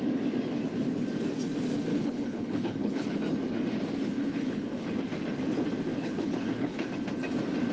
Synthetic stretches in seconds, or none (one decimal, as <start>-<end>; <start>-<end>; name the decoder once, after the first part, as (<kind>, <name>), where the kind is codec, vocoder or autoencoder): 1.9-3.2 (codec, HILCodec); 4.2-4.9; 5.9-6.9